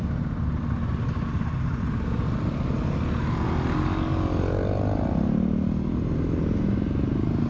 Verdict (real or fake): real